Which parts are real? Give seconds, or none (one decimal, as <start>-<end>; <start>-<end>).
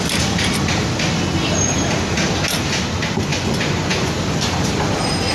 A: 0.0-3.3; 4.1-5.3